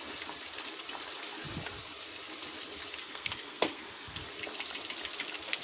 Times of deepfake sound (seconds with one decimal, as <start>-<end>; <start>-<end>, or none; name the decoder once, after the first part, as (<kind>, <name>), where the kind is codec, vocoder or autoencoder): 3.0-4.2 (codec, SNAC)